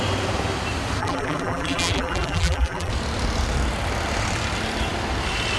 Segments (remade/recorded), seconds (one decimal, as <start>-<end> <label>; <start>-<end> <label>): 0.0-1.0 recorded; 1.0-2.9 remade; 2.9-5.6 recorded